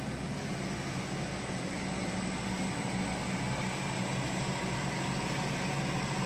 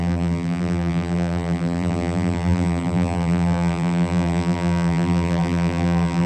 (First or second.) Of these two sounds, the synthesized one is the second